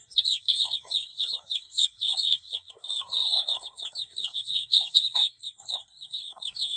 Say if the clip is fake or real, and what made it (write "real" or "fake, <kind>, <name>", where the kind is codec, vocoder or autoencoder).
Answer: fake, codec, SNAC